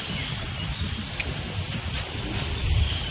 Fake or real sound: real